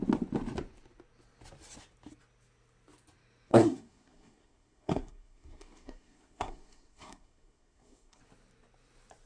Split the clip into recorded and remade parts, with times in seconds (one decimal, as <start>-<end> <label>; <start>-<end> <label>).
0.0-3.5 recorded; 3.5-8.2 remade; 8.2-9.3 recorded

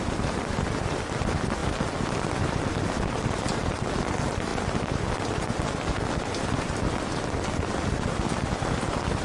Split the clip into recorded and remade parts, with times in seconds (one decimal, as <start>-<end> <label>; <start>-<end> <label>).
0.0-9.2 recorded

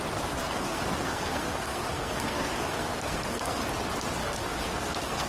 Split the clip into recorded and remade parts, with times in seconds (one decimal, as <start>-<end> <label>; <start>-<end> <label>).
0.0-0.4 recorded; 0.4-3.6 remade; 3.6-4.2 recorded; 4.2-5.3 remade